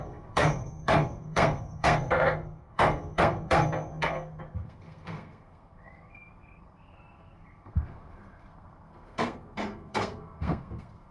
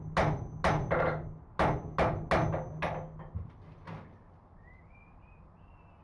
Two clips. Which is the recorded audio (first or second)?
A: second